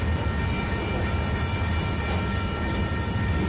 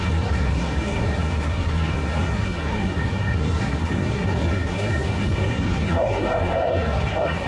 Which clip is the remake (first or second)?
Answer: second